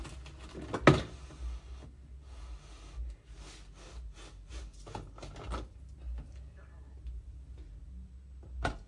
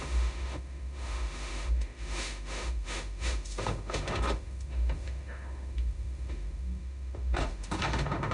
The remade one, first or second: second